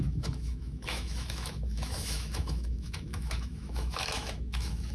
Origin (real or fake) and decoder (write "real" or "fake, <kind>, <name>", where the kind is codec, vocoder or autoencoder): fake, autoencoder, DAC-VAE